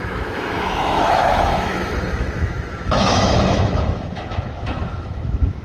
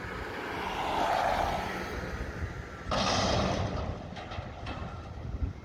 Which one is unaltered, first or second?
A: second